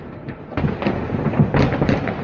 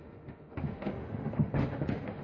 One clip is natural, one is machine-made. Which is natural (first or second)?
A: first